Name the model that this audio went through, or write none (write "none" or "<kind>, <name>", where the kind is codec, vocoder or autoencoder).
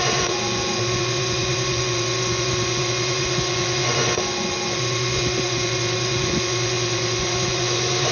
vocoder, Vocos